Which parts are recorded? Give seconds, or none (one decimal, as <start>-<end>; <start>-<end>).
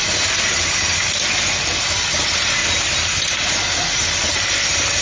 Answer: 0.0-1.6; 2.6-3.5